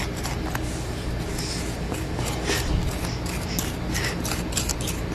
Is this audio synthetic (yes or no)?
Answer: no